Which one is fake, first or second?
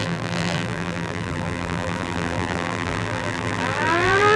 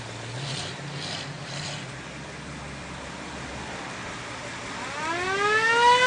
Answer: first